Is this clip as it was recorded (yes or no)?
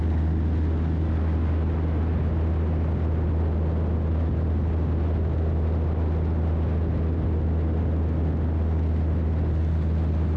yes